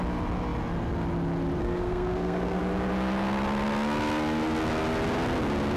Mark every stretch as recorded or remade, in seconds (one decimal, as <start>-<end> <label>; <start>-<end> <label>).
0.0-1.6 recorded; 1.6-2.6 remade; 2.6-5.8 recorded